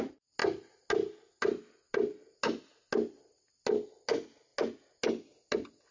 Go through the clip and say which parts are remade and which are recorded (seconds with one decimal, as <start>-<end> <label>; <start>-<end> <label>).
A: 0.0-5.9 recorded